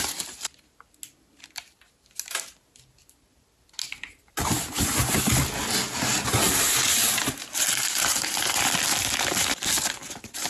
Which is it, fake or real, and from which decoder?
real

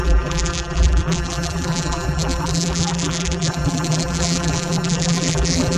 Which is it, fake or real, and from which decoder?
fake, vocoder, BigVGAN v2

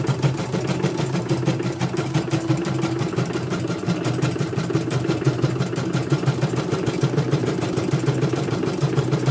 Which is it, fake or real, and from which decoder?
fake, vocoder, BigVGAN v2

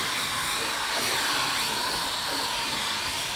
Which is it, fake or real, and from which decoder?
real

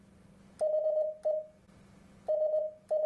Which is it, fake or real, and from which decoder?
real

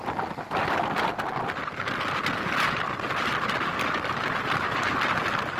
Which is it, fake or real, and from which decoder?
real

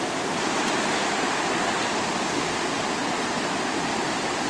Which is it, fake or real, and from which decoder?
real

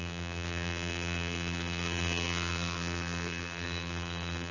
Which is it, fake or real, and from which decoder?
fake, vocoder, BigVGAN v2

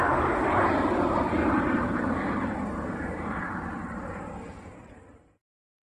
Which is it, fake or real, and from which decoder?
fake, vocoder, BigVGAN v2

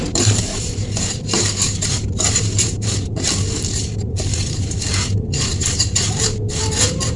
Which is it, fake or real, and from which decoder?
fake, vocoder, BigVGAN v2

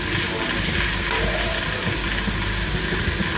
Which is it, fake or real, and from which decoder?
real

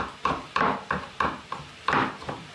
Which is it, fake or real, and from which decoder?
fake, vocoder, BigVGAN v2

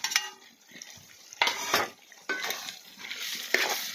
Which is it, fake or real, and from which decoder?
fake, vocoder, BigVGAN v2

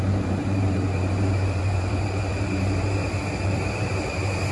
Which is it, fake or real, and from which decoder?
fake, vocoder, BigVGAN v2